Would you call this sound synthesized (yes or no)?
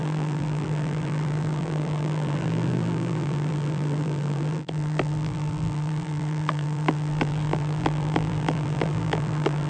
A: yes